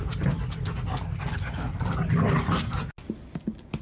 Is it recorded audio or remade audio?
recorded